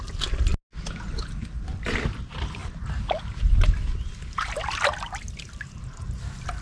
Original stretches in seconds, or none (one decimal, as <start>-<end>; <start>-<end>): 0.0-6.6